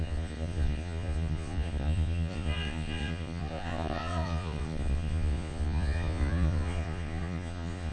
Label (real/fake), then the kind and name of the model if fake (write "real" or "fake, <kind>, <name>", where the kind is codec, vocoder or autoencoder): fake, vocoder, Vocos